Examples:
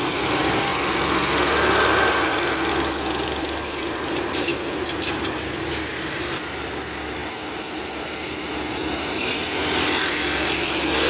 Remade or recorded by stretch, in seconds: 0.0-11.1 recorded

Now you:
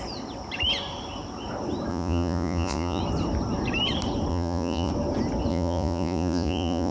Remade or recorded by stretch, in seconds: 0.0-1.9 recorded; 1.9-3.0 remade; 3.0-4.3 recorded; 4.3-4.9 remade; 4.9-5.5 recorded; 5.5-6.9 remade

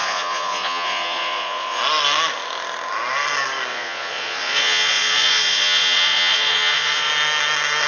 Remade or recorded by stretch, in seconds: 0.0-1.8 remade; 1.8-3.7 recorded; 3.7-7.1 remade; 7.1-7.9 recorded

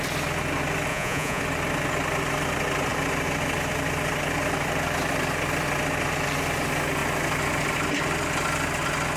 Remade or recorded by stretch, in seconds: 0.0-0.9 recorded; 0.9-1.4 remade; 1.4-9.2 recorded

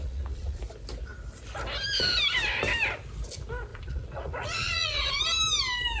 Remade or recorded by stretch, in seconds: 0.0-0.6 remade; 0.6-3.7 recorded; 3.7-5.2 remade; 5.2-6.0 recorded